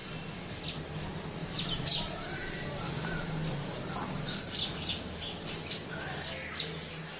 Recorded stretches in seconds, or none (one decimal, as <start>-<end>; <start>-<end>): 0.0-1.4; 3.3-7.2